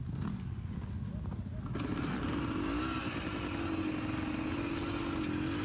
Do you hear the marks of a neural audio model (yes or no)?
no